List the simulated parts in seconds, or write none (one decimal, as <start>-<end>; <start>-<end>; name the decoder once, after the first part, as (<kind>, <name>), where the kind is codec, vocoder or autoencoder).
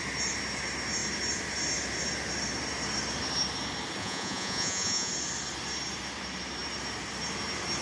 4.0-5.1 (vocoder, Vocos)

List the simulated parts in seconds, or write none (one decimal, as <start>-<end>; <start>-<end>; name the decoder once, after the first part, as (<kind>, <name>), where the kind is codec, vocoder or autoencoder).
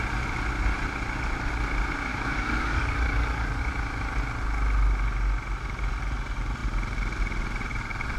2.1-3.6 (codec, DAC)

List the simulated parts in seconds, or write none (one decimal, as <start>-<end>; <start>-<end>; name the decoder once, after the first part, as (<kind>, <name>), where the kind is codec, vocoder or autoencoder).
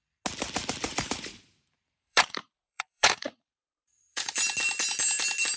0.9-4.3 (vocoder, BigVGAN v2)